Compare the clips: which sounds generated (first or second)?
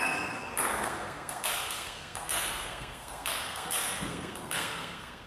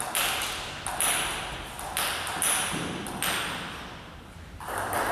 first